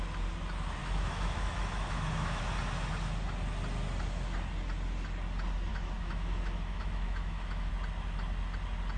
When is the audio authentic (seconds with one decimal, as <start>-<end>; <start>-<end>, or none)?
0.0-0.8; 2.4-5.7; 7.7-9.0